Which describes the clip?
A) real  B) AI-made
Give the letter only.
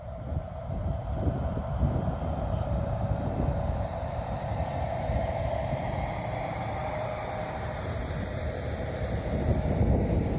B